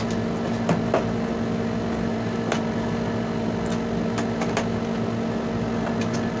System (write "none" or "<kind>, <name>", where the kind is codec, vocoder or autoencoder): none